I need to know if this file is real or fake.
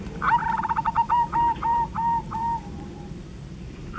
fake